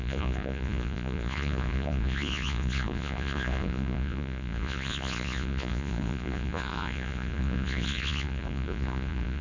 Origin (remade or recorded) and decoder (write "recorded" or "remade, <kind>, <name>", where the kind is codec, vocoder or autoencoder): remade, vocoder, Vocos